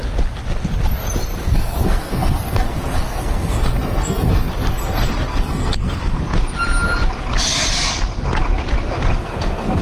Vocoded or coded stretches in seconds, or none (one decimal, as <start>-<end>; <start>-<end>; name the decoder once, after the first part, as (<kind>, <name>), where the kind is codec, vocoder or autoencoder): 1.4-4.5 (codec, SNAC); 5.3-6.2; 9.1-9.8